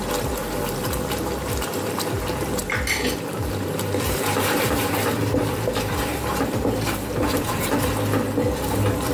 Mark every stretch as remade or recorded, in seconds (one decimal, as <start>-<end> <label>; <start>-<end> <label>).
0.0-2.6 recorded; 2.6-7.7 remade; 7.7-9.1 recorded